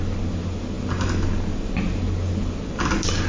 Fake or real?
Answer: real